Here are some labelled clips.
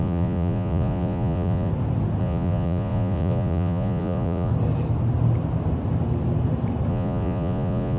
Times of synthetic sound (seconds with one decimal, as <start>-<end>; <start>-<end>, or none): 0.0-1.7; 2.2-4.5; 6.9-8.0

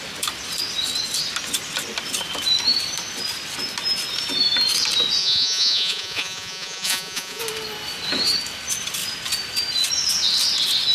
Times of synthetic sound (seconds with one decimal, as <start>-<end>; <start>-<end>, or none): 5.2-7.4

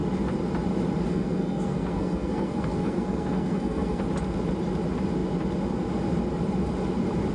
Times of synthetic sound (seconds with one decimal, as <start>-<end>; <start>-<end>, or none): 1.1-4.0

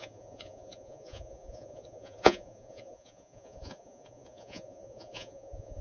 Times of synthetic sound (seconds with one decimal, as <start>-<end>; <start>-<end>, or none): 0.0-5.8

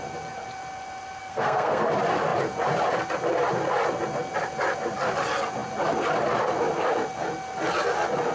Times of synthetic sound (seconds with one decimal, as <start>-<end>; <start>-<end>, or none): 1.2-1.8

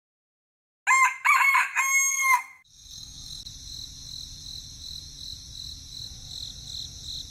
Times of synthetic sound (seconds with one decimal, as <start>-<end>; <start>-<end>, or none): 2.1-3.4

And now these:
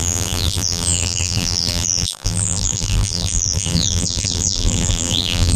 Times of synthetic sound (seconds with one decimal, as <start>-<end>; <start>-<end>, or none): 0.0-5.6